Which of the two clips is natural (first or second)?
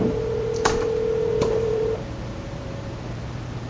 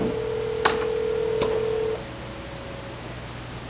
second